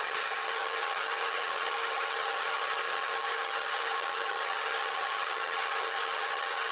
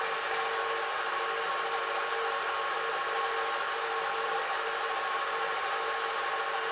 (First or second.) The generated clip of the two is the first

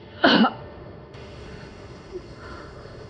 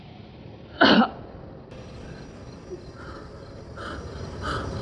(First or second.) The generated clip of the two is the first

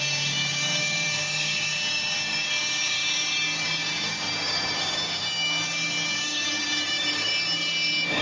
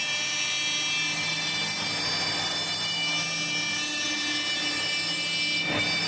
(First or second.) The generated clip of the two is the first